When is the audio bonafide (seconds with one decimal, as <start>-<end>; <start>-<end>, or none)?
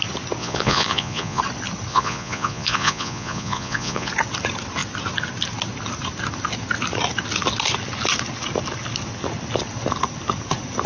0.0-0.4; 1.4-1.9; 4.1-10.9